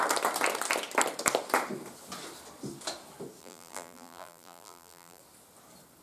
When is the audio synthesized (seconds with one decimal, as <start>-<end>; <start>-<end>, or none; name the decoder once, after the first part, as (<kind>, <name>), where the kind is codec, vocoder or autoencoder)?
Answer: 3.4-5.2 (vocoder, BigVGAN v2)

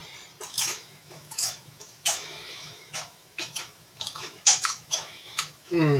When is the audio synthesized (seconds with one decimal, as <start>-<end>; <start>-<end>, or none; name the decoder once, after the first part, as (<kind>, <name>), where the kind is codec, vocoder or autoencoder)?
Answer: 0.5-6.0 (autoencoder, DAC-VAE)

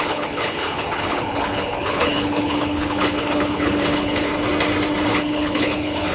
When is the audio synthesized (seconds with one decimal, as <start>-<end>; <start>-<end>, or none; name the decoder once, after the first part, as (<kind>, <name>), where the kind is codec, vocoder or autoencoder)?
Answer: 0.0-4.3 (codec, HILCodec); 5.1-6.1

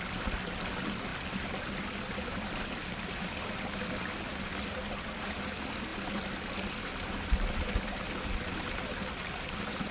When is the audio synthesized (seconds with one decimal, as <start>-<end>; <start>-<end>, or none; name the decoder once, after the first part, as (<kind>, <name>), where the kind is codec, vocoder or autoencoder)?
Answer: none

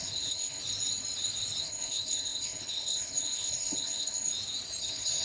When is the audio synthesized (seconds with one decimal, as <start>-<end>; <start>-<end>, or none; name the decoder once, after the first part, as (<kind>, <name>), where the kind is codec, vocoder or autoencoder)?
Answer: 0.0-0.6 (codec, HILCodec); 1.6-4.3; 4.8-5.2

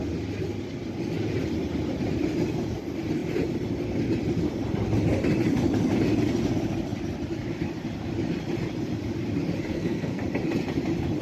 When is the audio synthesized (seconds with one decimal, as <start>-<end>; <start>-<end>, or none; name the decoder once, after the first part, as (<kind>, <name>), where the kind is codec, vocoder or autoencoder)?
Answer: 9.7-10.2 (codec, SNAC)

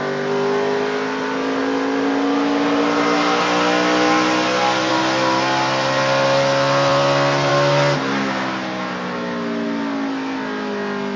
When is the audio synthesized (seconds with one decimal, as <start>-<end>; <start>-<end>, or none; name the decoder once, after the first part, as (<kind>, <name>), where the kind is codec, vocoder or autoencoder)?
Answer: none

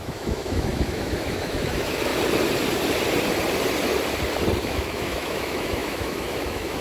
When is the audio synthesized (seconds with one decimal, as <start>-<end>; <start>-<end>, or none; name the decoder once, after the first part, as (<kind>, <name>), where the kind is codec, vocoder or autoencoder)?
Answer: 0.0-2.1 (autoencoder, DAC-VAE); 4.6-6.8